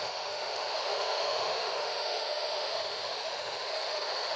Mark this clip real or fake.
fake